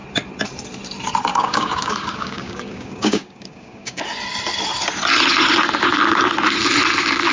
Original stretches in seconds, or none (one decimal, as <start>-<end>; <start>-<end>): 0.0-1.3; 4.0-7.3